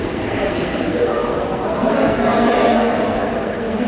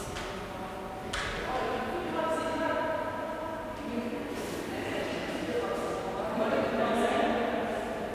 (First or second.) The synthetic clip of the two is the first